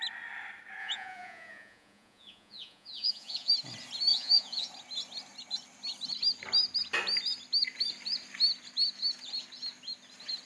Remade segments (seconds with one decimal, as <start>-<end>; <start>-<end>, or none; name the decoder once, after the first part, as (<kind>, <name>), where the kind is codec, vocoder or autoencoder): 0.8-3.5 (vocoder, Vocos); 4.1-4.7